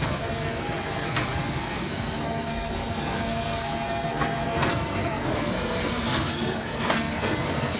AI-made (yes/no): yes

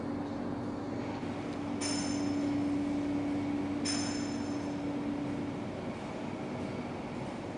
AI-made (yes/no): no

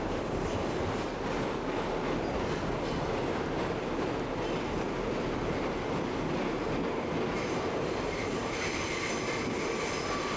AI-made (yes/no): no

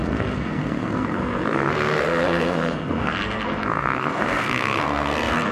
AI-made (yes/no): yes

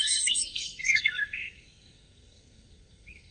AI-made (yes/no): yes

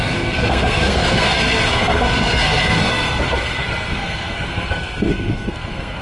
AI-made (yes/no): yes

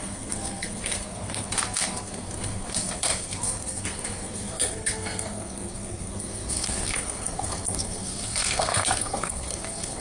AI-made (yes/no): yes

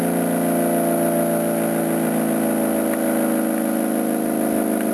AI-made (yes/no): no